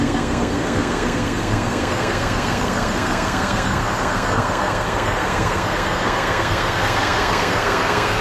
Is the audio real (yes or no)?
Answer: no